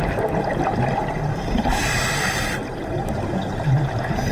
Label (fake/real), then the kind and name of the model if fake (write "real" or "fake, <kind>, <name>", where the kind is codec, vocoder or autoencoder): real